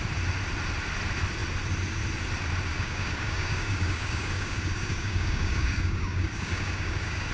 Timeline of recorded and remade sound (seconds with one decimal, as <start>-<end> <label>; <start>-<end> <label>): 0.0-2.7 recorded; 2.7-7.3 remade